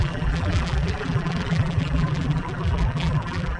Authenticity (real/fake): fake